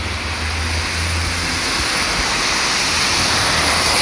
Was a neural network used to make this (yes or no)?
no